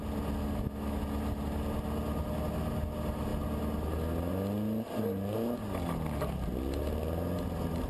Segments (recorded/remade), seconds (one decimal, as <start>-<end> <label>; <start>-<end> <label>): 0.0-0.4 recorded; 0.4-1.0 remade; 1.0-7.9 recorded